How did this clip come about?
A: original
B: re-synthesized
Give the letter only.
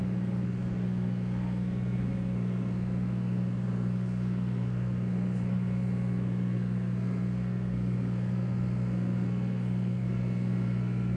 B